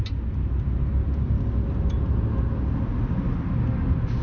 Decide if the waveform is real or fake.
real